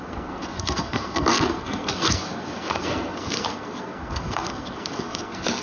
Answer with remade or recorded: remade